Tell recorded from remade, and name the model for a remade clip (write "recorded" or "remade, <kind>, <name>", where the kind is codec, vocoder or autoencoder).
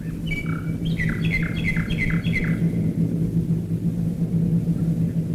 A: recorded